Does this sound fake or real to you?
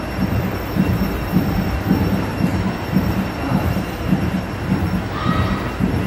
fake